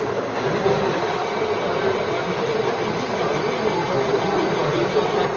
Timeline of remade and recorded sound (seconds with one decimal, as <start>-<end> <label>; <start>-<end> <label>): 0.0-1.2 remade; 1.2-4.4 recorded; 4.4-5.4 remade